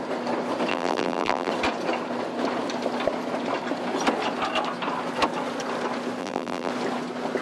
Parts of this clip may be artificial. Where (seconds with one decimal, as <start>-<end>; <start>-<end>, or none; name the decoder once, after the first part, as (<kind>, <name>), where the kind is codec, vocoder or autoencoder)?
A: 0.7-1.5 (vocoder, BigVGAN v2); 6.2-6.7